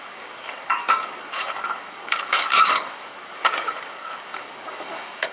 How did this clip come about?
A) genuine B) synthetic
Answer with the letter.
B